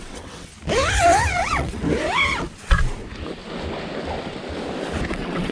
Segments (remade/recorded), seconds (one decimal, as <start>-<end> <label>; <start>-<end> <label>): 0.0-0.5 remade; 0.5-1.3 recorded; 1.3-1.8 remade; 1.8-5.1 recorded; 5.1-5.5 remade